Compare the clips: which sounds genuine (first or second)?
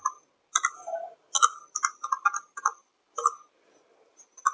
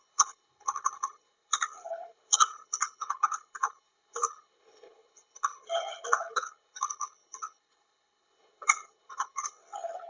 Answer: first